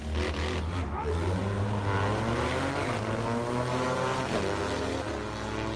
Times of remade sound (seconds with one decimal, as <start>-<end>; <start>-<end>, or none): none